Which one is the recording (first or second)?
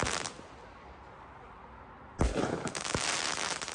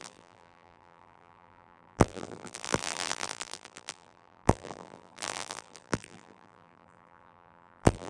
first